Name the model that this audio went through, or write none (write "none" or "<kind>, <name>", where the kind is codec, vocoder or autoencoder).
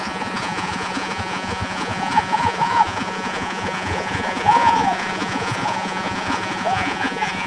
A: vocoder, Vocos